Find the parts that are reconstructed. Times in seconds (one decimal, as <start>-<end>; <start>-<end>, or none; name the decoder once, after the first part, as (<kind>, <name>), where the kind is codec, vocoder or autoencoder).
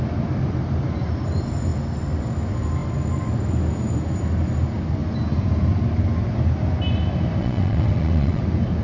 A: 7.4-8.4 (vocoder, WaveNeXt)